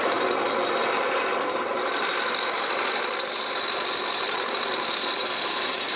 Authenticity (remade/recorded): remade